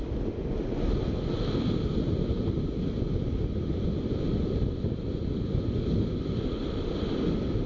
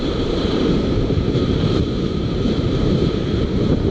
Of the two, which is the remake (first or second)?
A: second